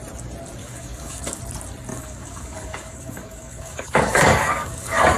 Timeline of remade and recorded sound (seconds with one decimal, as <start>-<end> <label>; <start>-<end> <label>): 0.0-0.6 recorded; 0.6-1.4 remade; 1.4-1.9 recorded; 1.9-5.2 remade